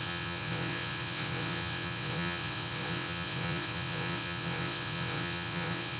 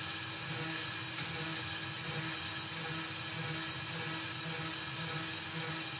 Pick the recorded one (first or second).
second